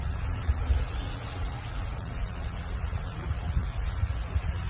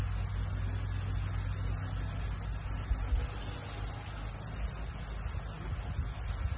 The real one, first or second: second